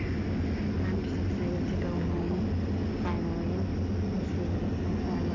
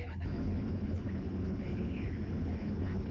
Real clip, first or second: first